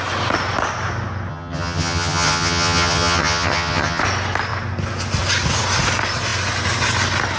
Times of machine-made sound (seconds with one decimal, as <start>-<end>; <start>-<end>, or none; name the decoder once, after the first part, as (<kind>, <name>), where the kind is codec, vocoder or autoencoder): 1.3-4.0 (vocoder, HiFi-GAN)